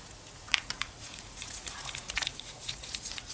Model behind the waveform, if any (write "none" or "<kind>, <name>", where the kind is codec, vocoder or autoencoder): vocoder, Vocos